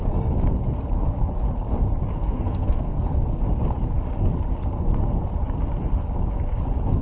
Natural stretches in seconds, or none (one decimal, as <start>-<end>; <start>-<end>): 0.0-2.1; 3.0-7.0